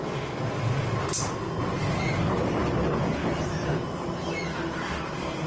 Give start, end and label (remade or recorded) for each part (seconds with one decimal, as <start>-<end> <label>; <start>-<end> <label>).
0.0-5.5 recorded